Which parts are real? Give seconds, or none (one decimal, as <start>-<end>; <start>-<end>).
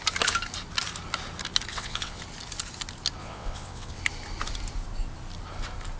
0.0-1.7; 2.2-3.2; 4.0-6.0